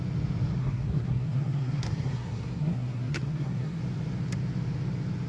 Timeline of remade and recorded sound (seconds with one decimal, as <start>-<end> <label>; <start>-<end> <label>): 0.0-0.6 recorded; 0.6-3.8 remade; 3.8-5.3 recorded